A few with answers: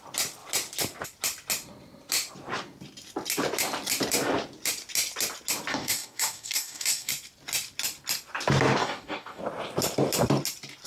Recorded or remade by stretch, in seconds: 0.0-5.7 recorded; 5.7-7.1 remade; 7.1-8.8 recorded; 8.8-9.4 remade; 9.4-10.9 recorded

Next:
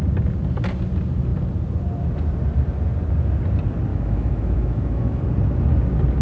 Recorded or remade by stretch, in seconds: 0.0-3.9 recorded; 3.9-5.2 remade; 5.2-6.2 recorded

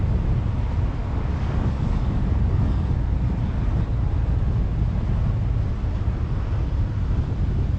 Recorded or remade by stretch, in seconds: 0.0-1.0 recorded; 1.0-2.9 remade; 2.9-7.8 recorded

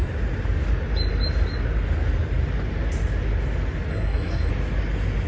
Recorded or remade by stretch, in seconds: 0.0-3.9 recorded; 3.9-4.5 remade; 4.5-5.3 recorded

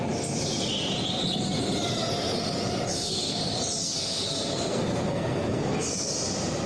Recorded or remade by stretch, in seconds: 0.0-2.9 recorded; 2.9-3.4 remade; 3.4-3.8 recorded; 3.8-6.1 remade; 6.1-6.7 recorded

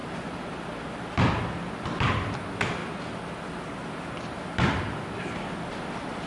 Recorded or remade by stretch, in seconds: 0.0-1.0 remade; 1.0-6.3 recorded

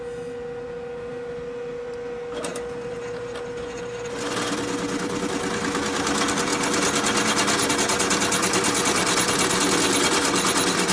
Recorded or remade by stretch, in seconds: 0.0-10.9 recorded

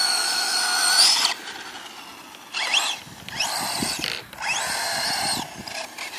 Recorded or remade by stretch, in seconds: 0.0-0.6 remade; 0.6-6.2 recorded